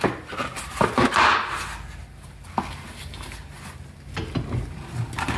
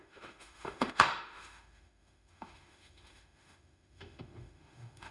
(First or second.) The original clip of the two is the first